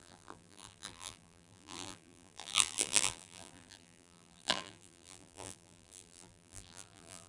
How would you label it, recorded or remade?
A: remade